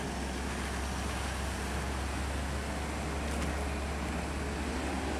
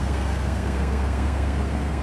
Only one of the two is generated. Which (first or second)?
second